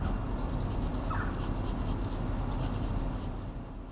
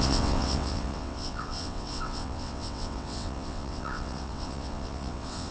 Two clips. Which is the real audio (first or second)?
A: first